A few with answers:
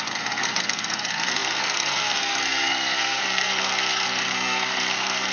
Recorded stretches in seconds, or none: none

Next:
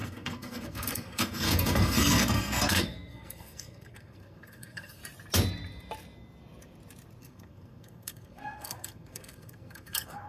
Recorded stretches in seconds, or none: 5.0-7.2

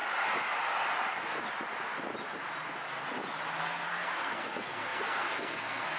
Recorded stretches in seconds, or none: 0.0-3.6